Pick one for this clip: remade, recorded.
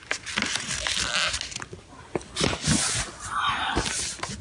recorded